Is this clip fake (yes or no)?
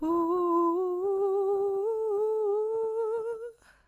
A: no